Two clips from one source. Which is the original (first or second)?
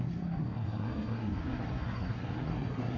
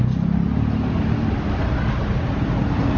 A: second